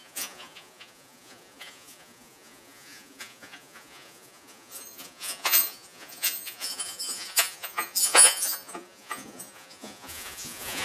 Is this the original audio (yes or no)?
no